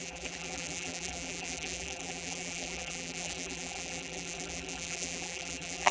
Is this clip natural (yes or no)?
no